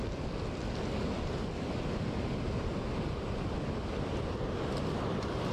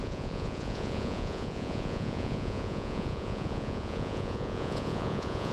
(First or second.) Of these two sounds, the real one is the first